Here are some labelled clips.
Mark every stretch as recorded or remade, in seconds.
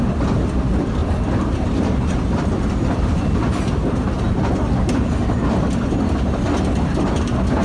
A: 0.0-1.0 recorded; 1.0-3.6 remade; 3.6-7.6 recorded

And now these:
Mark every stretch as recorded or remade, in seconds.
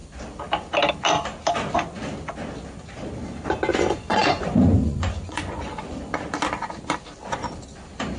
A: 0.0-3.7 recorded; 3.7-6.2 remade; 6.2-8.2 recorded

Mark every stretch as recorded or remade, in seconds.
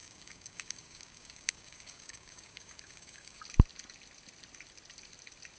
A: 0.0-3.4 remade; 3.4-5.6 recorded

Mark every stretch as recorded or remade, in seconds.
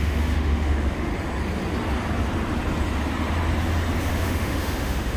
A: 0.0-1.1 remade; 1.1-4.1 recorded; 4.1-5.2 remade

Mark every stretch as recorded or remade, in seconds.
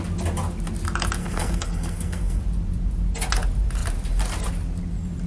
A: 0.0-1.2 recorded; 1.2-2.4 remade; 2.4-5.3 recorded